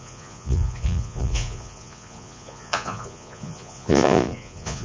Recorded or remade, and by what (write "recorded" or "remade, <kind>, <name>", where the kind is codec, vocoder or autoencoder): remade, vocoder, Vocos